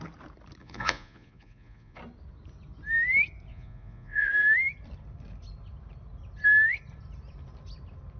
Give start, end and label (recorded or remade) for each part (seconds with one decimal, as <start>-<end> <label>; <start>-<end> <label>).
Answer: 0.0-0.6 recorded; 0.6-2.0 remade; 2.0-3.5 recorded; 3.5-4.3 remade; 4.3-8.2 recorded